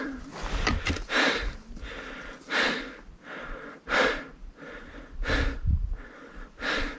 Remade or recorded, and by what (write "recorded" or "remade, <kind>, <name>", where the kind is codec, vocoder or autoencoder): remade, vocoder, BigVGAN v2